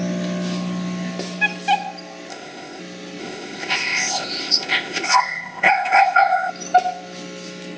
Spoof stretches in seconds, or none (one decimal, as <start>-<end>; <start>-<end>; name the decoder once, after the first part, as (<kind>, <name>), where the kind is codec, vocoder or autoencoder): 2.3-2.8 (codec, ZipCodec); 3.2-6.5